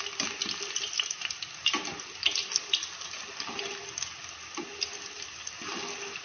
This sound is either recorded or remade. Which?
recorded